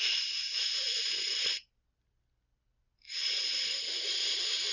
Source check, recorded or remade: recorded